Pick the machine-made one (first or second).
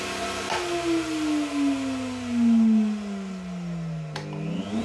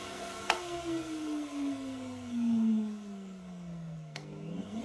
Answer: second